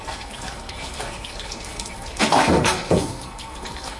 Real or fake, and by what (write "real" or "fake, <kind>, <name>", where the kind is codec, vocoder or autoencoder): fake, codec, SNAC